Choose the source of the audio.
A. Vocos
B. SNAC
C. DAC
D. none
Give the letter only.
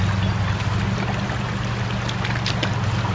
D